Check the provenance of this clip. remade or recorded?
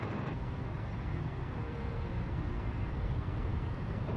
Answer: remade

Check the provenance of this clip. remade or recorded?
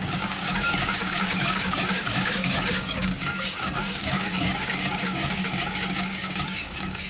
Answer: remade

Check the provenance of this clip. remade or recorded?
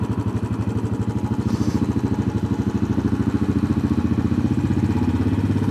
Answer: recorded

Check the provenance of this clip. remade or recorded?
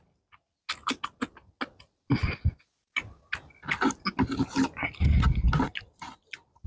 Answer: recorded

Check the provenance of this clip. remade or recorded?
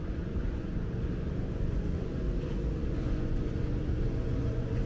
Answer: remade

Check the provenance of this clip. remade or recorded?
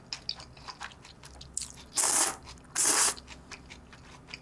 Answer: recorded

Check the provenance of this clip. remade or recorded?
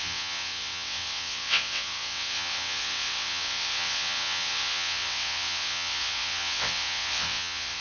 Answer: remade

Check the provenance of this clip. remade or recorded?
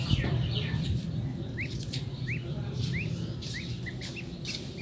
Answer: recorded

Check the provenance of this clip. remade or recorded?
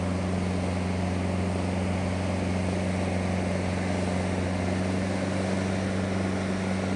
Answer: recorded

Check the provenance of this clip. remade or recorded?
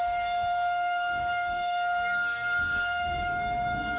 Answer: remade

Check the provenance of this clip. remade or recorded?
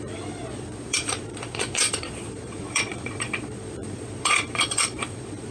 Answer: remade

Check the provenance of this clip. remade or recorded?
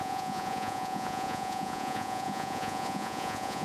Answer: remade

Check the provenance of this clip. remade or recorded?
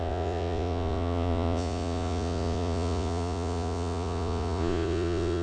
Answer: remade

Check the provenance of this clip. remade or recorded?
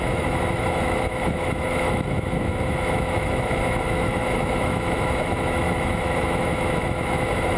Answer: remade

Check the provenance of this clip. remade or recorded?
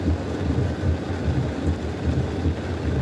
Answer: recorded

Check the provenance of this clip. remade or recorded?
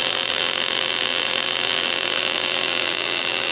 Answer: remade